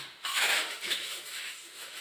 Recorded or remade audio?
remade